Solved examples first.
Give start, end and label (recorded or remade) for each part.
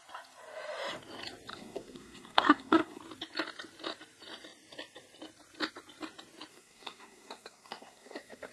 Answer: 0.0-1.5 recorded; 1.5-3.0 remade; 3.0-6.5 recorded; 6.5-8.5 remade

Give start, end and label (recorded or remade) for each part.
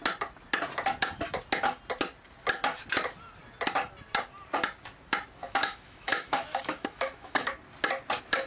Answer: 0.0-5.4 recorded; 5.4-7.5 remade; 7.5-8.5 recorded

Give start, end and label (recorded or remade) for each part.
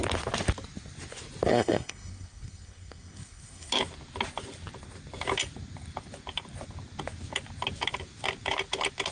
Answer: 0.0-1.5 recorded; 1.5-3.7 remade; 3.7-9.1 recorded